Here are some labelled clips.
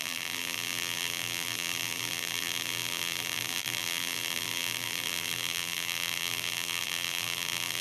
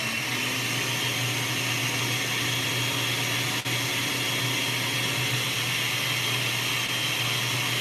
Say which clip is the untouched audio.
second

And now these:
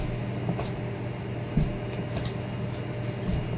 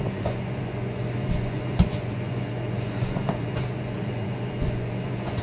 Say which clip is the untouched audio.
first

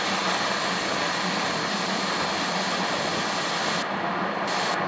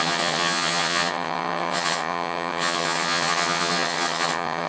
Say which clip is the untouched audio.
first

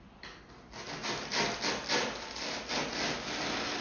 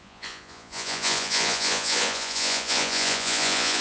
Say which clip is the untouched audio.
first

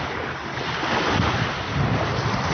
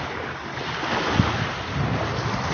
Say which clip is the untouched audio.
second